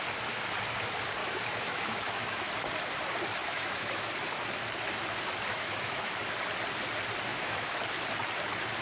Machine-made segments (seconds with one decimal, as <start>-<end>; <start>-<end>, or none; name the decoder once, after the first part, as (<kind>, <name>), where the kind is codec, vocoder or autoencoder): 1.2-2.5 (autoencoder, DAC-VAE); 3.4-4.1; 5.5-6.2; 7.3-7.8